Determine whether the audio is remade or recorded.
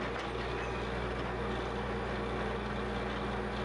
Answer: recorded